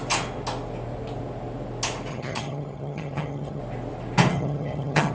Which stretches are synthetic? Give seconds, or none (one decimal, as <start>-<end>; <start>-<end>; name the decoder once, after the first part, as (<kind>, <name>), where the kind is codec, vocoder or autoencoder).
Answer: 2.1-3.6 (vocoder, HiFi-GAN); 4.3-5.1

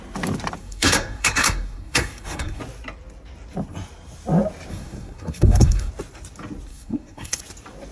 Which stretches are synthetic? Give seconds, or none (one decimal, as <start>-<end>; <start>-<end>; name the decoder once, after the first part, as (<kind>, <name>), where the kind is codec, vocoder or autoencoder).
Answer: 0.6-2.6 (codec, SNAC); 4.7-5.9; 6.7-7.4

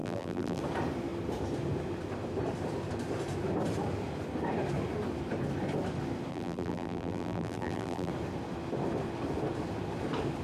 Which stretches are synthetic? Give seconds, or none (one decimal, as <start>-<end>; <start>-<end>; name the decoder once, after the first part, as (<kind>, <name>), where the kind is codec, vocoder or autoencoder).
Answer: 0.0-0.6 (vocoder, BigVGAN v2); 6.3-8.1

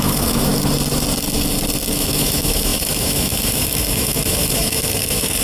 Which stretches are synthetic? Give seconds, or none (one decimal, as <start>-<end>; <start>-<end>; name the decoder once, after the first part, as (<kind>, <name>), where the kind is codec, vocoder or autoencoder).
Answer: 0.0-0.5 (autoencoder, DAC-VAE); 1.9-5.4